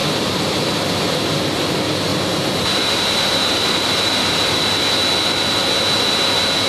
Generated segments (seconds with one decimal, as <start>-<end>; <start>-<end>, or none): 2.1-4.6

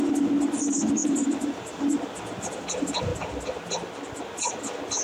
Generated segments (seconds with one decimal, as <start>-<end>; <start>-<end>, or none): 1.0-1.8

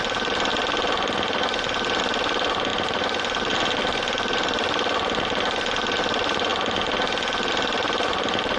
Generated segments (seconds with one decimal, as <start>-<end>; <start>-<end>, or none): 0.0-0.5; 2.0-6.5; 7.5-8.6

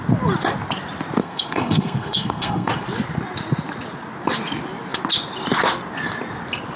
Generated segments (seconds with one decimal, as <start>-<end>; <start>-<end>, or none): 1.2-2.7